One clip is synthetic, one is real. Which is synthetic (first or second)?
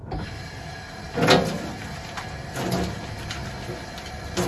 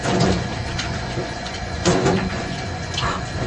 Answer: second